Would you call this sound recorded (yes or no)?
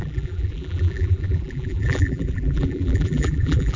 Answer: no